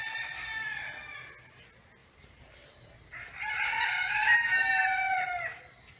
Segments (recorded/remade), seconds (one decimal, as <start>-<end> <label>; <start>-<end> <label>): 0.0-2.0 recorded; 2.0-5.6 remade; 5.6-6.0 recorded